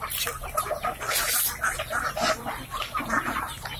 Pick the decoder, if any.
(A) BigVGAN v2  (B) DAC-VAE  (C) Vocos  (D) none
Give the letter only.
D